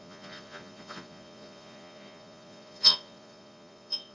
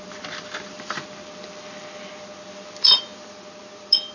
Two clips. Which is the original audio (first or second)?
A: second